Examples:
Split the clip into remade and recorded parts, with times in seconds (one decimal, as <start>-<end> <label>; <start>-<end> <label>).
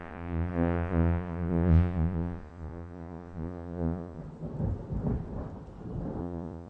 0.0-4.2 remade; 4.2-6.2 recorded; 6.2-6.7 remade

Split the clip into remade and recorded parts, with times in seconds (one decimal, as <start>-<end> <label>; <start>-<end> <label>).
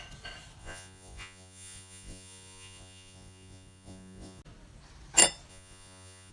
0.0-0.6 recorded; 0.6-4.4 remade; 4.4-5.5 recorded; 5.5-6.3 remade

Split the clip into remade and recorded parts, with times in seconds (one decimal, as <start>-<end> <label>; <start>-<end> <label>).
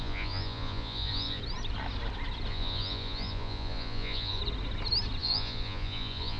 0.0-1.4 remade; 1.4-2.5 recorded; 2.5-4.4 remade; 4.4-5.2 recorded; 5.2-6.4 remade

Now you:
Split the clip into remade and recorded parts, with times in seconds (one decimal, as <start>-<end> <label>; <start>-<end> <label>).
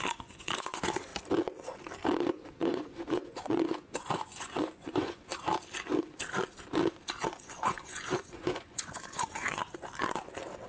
0.0-1.1 remade; 1.1-2.3 recorded; 2.3-5.3 remade; 5.3-7.3 recorded; 7.3-9.6 remade; 9.6-10.7 recorded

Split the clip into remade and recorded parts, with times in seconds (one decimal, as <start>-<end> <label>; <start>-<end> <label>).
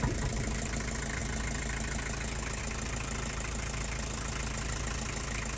0.0-5.6 recorded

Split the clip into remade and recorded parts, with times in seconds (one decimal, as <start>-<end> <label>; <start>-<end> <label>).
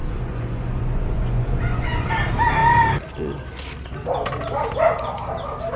0.0-2.1 remade; 2.1-5.8 recorded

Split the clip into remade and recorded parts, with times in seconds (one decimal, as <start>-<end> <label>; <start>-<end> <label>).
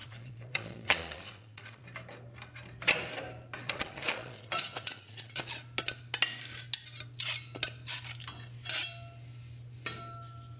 0.0-1.8 remade; 1.8-3.6 recorded; 3.6-5.4 remade; 5.4-10.6 recorded